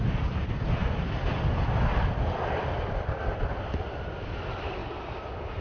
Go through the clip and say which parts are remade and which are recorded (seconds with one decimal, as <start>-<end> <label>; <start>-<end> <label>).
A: 0.0-5.6 recorded